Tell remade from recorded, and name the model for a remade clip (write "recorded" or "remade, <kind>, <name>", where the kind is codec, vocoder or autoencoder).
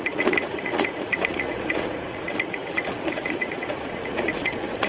remade, vocoder, Vocos